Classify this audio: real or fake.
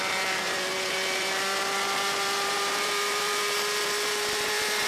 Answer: fake